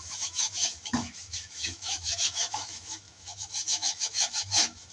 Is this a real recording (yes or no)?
no